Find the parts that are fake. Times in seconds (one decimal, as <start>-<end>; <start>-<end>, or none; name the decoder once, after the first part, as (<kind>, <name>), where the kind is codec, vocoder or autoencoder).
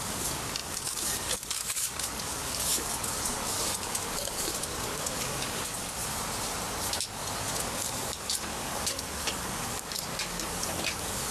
0.0-6.0 (codec, DAC); 6.7-11.3